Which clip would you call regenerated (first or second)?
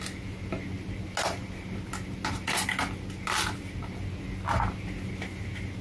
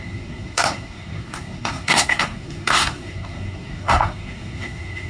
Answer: second